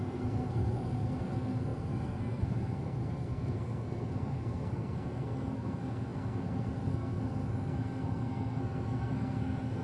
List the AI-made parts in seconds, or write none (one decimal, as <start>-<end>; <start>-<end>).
0.0-9.8